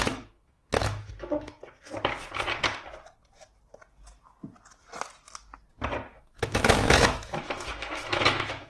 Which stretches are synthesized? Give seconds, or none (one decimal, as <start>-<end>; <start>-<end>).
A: 0.0-1.6; 6.1-8.7